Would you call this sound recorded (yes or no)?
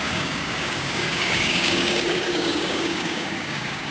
no